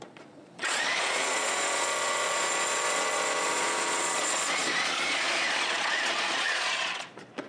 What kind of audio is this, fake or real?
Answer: fake